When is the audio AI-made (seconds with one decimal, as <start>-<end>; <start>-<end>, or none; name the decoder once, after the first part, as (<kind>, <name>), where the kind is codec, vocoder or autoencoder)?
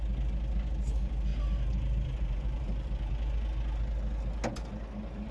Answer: 1.3-3.1 (vocoder, BigVGAN v2)